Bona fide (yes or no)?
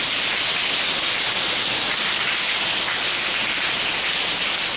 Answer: yes